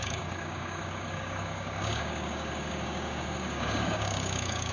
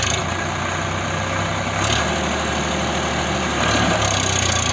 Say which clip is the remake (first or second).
first